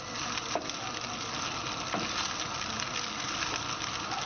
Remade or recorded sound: recorded